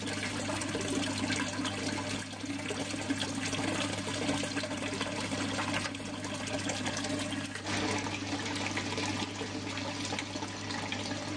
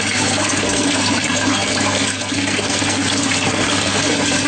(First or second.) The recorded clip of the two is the first